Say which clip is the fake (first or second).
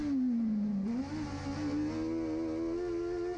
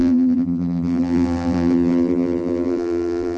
second